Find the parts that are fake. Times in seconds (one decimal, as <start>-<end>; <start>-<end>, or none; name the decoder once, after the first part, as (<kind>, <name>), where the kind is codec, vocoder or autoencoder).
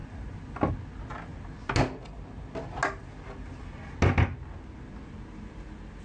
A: 0.0-0.7 (vocoder, BigVGAN v2)